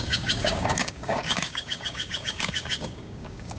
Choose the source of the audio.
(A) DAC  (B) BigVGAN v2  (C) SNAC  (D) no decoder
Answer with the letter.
A